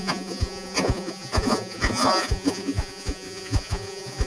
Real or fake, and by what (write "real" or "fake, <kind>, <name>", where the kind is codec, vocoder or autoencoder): fake, vocoder, Vocos